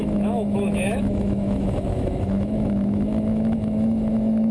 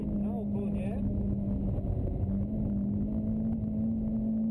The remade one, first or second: first